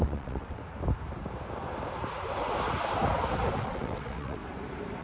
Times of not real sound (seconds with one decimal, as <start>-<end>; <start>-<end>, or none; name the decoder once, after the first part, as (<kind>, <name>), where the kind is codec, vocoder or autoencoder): 0.0-0.6 (vocoder, WaveNeXt); 3.6-4.4